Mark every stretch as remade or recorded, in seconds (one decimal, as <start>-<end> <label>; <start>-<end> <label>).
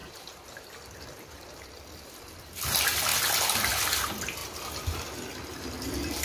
0.0-0.7 remade; 0.7-6.2 recorded